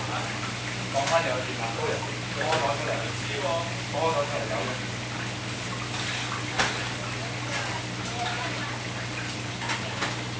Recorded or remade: recorded